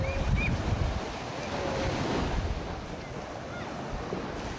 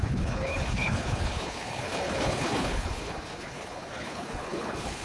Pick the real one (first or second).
first